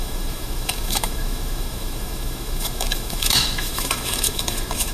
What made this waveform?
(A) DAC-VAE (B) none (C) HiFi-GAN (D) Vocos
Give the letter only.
A